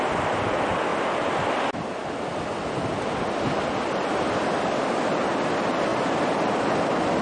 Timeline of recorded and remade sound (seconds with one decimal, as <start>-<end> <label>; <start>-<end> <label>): 0.0-0.9 recorded; 0.9-1.5 remade; 1.5-5.9 recorded; 5.9-6.5 remade; 6.5-7.2 recorded